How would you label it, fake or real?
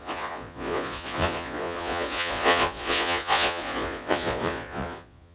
fake